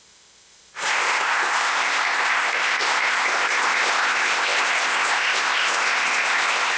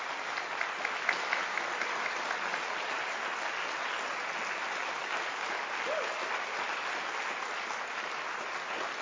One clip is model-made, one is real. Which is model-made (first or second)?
first